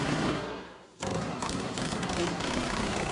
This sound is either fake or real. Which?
fake